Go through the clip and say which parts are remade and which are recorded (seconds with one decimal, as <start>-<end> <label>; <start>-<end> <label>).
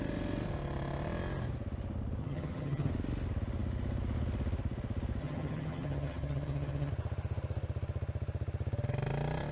0.0-2.2 recorded; 2.2-2.9 remade; 2.9-5.2 recorded; 5.2-6.9 remade; 6.9-9.5 recorded